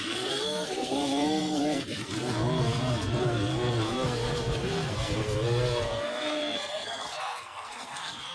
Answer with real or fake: fake